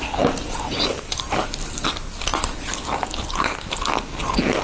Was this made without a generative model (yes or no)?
yes